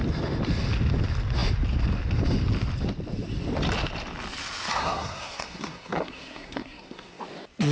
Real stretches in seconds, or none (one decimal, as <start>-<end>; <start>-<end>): 0.0-4.8; 7.2-7.7

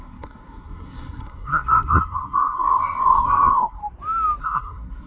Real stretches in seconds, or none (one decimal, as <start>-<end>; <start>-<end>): 3.8-4.4

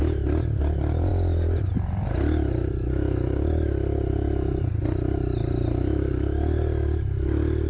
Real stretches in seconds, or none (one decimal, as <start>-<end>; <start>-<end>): 0.0-7.7